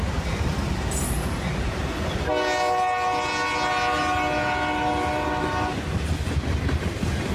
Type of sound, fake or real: real